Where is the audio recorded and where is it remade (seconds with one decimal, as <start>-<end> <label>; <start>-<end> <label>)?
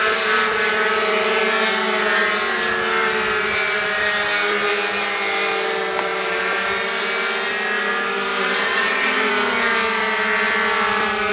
0.0-8.3 recorded; 8.3-9.3 remade; 9.3-11.3 recorded